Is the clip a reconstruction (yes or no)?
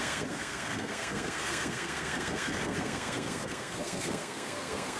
yes